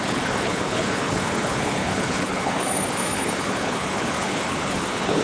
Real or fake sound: fake